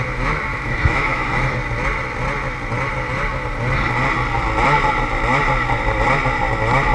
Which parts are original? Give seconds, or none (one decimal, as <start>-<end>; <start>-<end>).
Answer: 0.0-0.5; 1.5-6.9